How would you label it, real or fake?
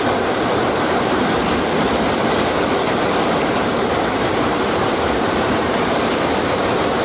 fake